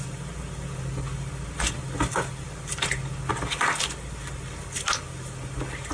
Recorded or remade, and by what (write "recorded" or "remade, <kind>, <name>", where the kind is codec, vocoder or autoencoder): recorded